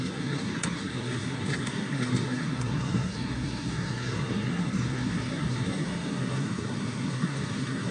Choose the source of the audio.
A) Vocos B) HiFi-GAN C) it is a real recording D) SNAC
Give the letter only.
D